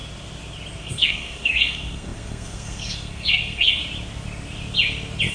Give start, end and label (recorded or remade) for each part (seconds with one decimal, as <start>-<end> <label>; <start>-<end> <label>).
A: 0.0-0.8 recorded; 0.8-3.8 remade; 3.8-5.3 recorded